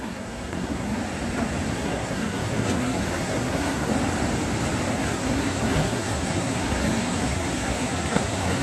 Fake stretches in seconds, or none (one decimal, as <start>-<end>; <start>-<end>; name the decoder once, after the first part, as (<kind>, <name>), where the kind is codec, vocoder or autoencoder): 0.0-1.0 (codec, SNAC); 1.7-3.9; 4.9-8.6